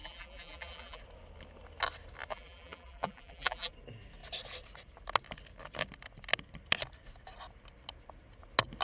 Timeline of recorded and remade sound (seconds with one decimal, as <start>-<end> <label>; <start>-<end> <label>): 0.0-1.0 remade; 1.0-2.3 recorded; 2.3-3.7 remade; 3.7-8.8 recorded